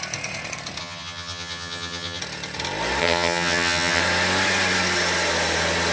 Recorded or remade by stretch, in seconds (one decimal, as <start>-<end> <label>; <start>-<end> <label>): 0.0-0.8 recorded; 0.8-2.2 remade; 2.2-3.0 recorded; 3.0-4.0 remade; 4.0-5.9 recorded